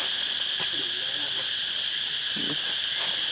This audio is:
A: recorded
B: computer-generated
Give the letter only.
A